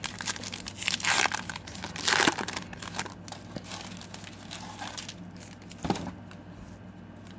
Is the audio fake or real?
real